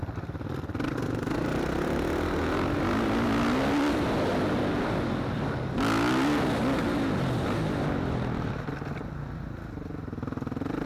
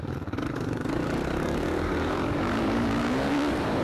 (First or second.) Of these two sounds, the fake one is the second